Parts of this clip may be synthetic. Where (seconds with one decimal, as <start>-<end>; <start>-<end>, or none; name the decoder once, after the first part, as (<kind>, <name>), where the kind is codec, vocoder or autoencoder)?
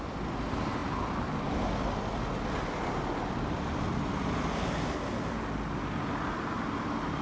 none